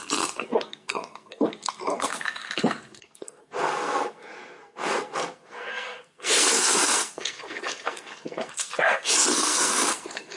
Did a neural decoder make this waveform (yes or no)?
yes